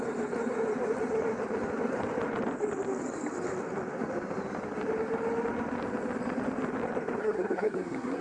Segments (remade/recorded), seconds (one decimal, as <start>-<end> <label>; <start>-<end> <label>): 0.0-7.2 recorded; 7.2-8.2 remade